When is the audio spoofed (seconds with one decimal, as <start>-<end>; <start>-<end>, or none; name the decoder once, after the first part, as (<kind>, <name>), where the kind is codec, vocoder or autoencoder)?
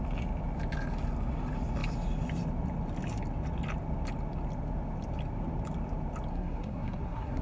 6.3-7.4 (codec, SNAC)